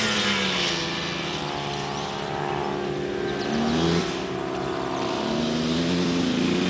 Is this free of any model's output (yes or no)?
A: yes